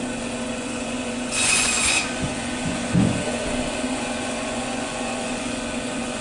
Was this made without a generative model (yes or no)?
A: no